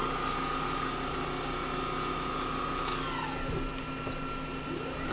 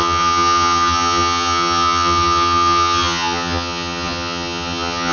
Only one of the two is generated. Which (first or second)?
second